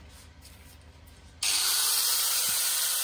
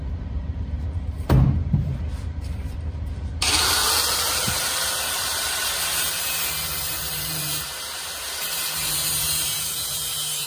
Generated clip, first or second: second